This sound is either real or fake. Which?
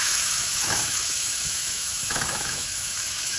fake